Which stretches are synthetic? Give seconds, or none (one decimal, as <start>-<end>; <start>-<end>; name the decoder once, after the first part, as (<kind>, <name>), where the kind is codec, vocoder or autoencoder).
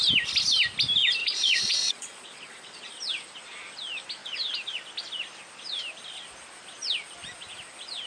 1.2-2.9 (vocoder, Vocos)